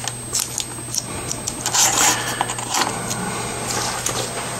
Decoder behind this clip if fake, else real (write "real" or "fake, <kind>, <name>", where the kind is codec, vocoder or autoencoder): real